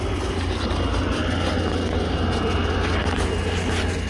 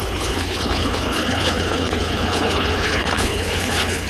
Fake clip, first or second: second